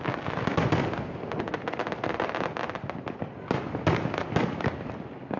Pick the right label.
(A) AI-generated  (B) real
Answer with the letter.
B